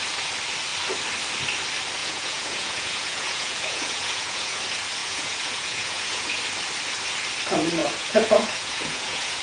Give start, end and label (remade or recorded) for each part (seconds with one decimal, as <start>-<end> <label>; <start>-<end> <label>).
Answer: 0.0-2.0 recorded; 2.0-4.6 remade; 4.6-5.0 recorded; 5.0-6.4 remade; 6.4-7.8 recorded; 7.8-9.4 remade